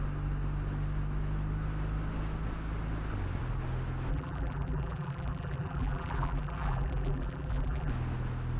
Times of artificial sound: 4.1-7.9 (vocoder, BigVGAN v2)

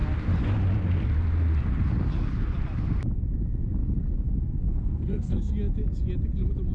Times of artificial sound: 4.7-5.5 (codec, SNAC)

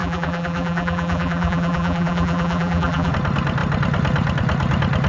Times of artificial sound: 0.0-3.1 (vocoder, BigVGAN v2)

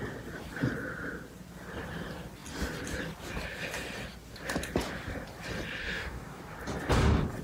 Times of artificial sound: 5.8-6.4 (codec, DAC)

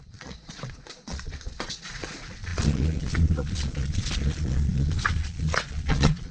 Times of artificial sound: 0.0-6.3 (vocoder, Vocos)

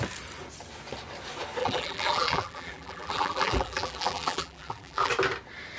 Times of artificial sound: 1.6-5.1 (vocoder, BigVGAN v2)